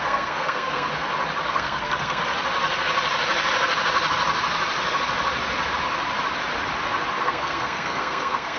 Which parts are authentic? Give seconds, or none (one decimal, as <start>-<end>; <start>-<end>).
0.9-1.5; 2.2-7.2